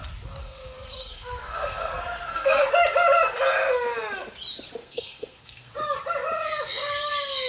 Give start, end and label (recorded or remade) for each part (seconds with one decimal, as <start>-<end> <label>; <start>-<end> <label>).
0.0-0.4 recorded; 0.4-2.7 remade; 2.7-4.8 recorded; 4.8-5.7 remade; 5.7-7.5 recorded